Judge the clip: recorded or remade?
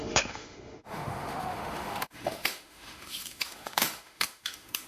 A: remade